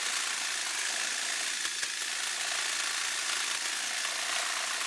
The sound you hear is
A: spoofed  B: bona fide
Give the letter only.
B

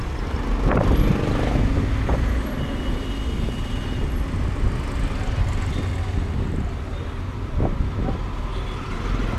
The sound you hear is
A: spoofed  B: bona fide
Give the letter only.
B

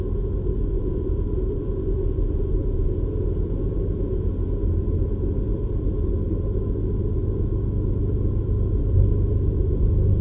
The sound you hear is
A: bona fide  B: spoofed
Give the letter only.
A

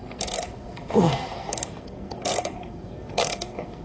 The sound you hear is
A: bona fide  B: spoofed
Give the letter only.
B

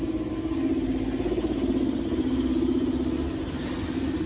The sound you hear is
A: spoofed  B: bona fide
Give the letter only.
B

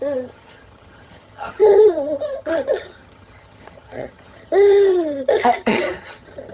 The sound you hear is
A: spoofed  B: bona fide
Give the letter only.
A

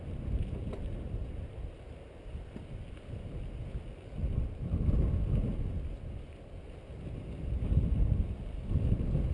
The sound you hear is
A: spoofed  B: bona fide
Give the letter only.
B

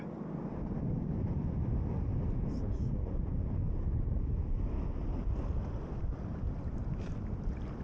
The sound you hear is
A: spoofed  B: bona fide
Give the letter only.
B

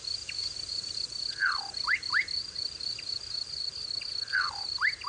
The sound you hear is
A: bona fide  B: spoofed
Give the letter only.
B